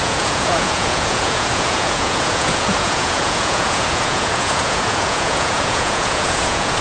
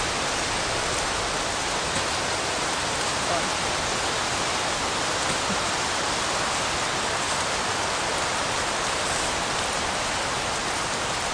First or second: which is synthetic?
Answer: first